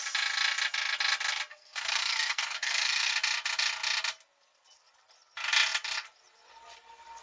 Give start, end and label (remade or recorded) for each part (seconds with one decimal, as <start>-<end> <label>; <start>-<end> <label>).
0.0-1.5 recorded; 1.5-3.1 remade; 3.1-7.2 recorded